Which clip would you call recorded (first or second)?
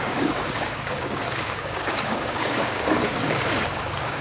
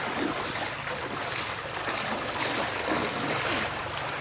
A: second